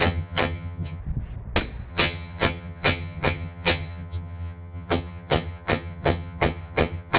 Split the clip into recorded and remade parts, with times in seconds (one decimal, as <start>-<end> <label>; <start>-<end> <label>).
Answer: 0.0-1.0 remade; 1.0-1.9 recorded; 1.9-7.2 remade